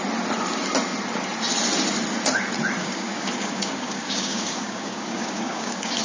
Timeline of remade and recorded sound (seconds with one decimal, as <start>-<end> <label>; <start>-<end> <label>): 0.0-2.8 recorded; 2.8-6.0 remade